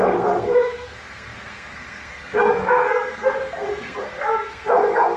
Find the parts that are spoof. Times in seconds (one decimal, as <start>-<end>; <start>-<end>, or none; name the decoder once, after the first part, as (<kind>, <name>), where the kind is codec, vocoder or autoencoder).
0.0-5.2 (codec, SNAC)